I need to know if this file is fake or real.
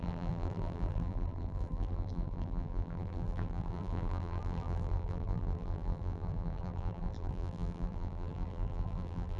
fake